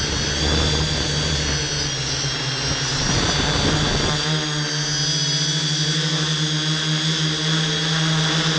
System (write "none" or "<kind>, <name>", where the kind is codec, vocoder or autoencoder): none